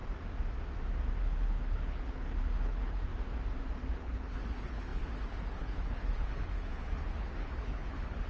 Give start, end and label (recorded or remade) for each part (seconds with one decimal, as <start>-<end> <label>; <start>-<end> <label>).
0.0-1.2 recorded; 1.2-3.1 remade; 3.1-3.9 recorded; 3.9-8.3 remade